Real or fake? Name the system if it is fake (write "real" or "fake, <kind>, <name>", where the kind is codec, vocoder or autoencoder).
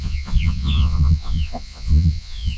fake, vocoder, Vocos